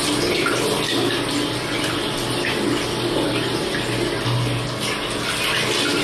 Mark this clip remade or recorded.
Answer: recorded